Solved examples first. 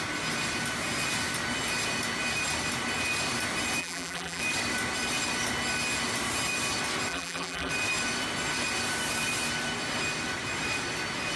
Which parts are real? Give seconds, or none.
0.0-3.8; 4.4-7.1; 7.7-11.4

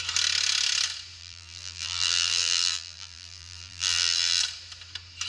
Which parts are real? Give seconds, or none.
0.0-1.2; 4.4-5.3

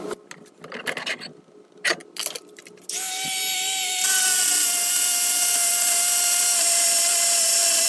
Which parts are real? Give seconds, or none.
0.0-7.9